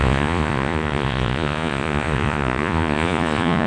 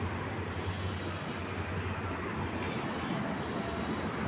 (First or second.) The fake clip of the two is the first